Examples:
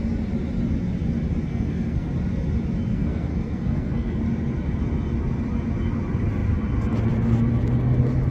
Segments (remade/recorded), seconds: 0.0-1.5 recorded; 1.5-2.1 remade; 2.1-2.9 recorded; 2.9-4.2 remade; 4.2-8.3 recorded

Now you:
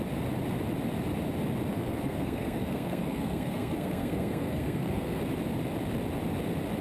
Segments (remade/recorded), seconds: 0.0-1.7 recorded; 1.7-5.2 remade; 5.2-6.8 recorded

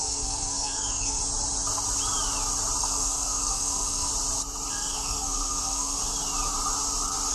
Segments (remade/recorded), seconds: 0.0-1.2 remade; 1.2-2.8 recorded; 2.8-4.1 remade; 4.1-4.7 recorded; 4.7-6.0 remade; 6.0-7.3 recorded

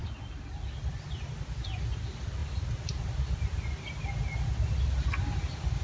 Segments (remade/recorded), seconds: 0.0-5.8 recorded